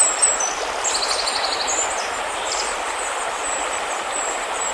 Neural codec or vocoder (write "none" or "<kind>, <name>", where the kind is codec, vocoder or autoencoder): none